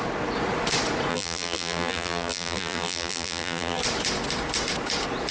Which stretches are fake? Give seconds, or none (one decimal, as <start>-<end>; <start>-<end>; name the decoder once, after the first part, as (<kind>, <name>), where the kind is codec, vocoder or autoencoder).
1.1-3.8 (vocoder, BigVGAN v2)